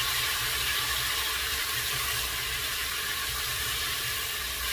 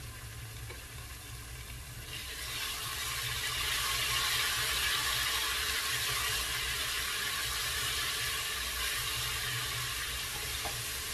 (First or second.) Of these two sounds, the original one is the second